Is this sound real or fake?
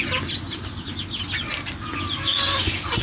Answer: real